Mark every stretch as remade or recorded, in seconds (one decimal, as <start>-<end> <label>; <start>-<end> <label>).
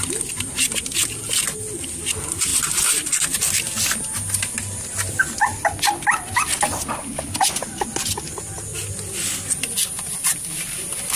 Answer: 0.0-11.2 recorded